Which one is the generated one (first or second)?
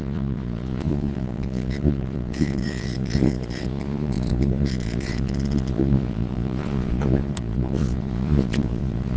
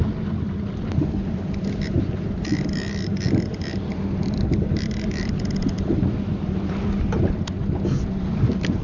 first